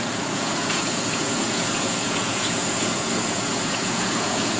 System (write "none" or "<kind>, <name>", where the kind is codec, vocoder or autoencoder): vocoder, Vocos